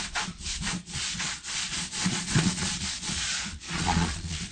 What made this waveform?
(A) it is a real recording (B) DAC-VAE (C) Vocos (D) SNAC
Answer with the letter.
C